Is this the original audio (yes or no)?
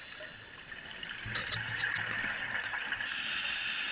yes